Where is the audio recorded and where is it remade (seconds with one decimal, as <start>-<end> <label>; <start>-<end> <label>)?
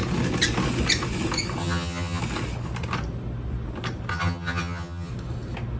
0.0-1.6 recorded; 1.6-2.2 remade; 2.2-4.1 recorded; 4.1-5.1 remade; 5.1-5.8 recorded